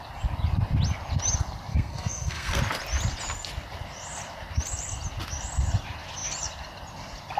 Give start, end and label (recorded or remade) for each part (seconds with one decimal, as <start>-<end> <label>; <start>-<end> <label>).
0.0-1.7 recorded; 1.7-2.6 remade; 2.6-7.4 recorded